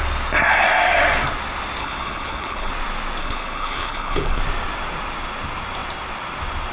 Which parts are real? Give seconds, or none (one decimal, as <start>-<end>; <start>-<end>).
0.0-1.8; 2.7-3.2; 4.4-6.7